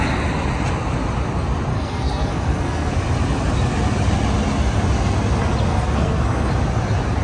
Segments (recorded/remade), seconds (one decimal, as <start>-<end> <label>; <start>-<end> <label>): 0.0-1.7 recorded; 1.7-2.9 remade; 2.9-5.7 recorded; 5.7-6.5 remade; 6.5-7.2 recorded